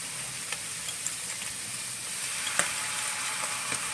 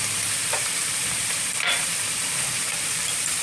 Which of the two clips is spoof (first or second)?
second